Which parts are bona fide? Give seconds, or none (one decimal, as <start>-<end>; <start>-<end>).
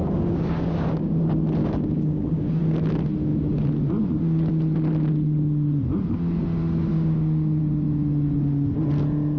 1.2-1.6; 2.6-6.9; 7.6-9.4